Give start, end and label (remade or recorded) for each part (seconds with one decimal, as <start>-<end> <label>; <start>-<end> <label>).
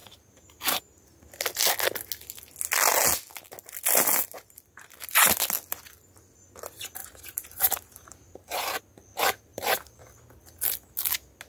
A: 0.0-0.8 remade; 0.8-7.0 recorded; 7.0-8.8 remade; 8.8-9.5 recorded; 9.5-10.0 remade; 10.0-11.5 recorded